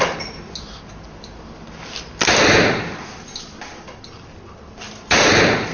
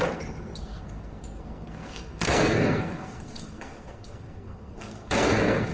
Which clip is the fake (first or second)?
second